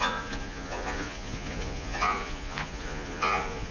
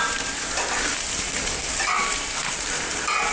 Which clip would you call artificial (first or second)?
first